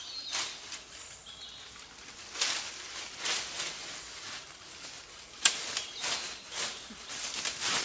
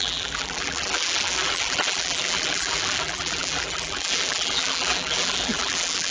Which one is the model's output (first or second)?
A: second